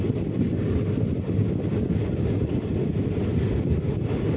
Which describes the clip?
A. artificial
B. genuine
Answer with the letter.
B